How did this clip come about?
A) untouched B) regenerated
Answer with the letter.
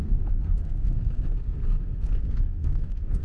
B